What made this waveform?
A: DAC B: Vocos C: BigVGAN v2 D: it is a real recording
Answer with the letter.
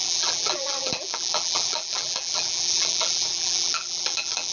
C